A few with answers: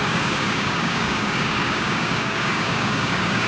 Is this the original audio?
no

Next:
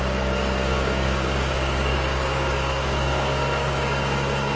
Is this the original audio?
no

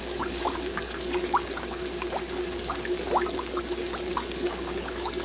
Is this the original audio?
no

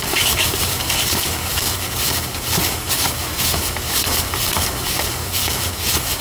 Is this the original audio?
no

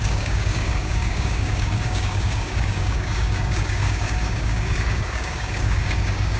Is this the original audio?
no